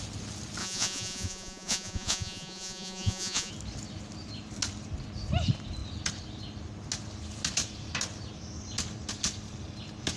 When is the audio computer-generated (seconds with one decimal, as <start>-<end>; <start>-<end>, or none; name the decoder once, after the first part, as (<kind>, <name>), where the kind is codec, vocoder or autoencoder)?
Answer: 0.6-3.5 (vocoder, Vocos)